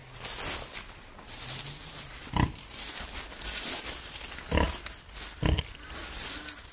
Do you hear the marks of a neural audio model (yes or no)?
no